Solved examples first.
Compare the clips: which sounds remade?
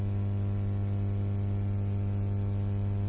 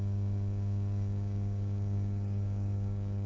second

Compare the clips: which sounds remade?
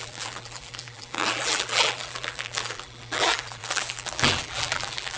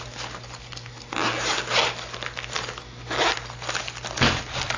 first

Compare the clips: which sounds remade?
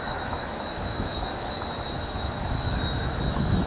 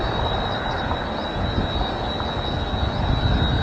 first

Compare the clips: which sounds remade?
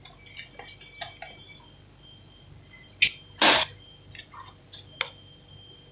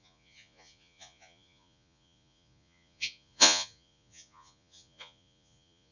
second